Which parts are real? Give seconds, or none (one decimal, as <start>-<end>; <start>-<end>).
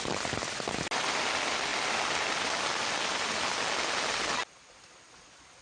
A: 0.0-5.6